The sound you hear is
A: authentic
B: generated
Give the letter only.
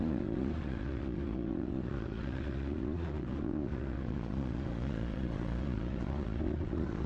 B